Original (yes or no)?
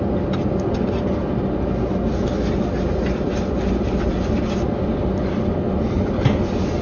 yes